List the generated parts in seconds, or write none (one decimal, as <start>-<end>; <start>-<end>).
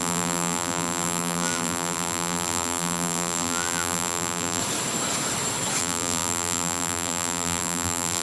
0.0-4.6; 5.8-8.2